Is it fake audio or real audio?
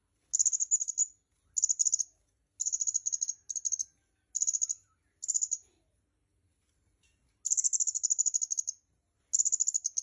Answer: real